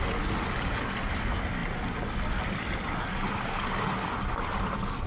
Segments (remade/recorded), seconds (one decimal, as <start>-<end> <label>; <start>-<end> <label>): 0.0-5.1 recorded